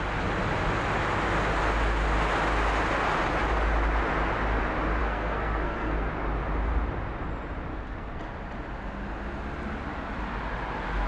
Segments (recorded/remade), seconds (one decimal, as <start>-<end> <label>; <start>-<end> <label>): 0.0-5.0 recorded; 5.0-6.1 remade; 6.1-7.7 recorded; 7.7-8.2 remade; 8.2-11.1 recorded